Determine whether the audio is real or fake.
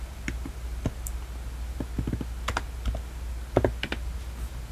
real